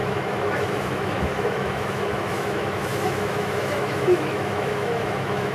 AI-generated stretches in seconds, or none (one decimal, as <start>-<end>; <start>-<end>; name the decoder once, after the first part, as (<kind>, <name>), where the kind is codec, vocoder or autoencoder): 0.0-5.5 (autoencoder, DAC-VAE)